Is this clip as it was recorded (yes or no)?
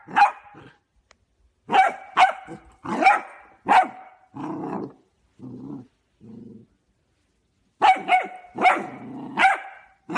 yes